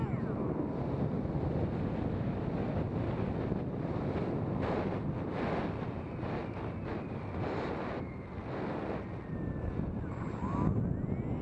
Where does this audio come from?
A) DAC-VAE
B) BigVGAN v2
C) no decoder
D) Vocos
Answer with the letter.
C